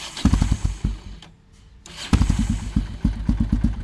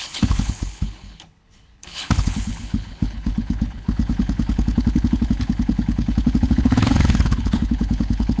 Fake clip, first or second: second